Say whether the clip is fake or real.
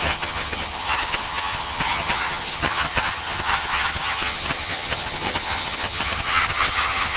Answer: fake